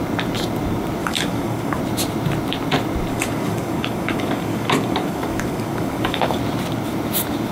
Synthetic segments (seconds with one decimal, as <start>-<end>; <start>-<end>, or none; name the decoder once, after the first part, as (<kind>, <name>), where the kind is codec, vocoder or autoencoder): 1.0-1.8 (codec, DAC); 3.1-6.4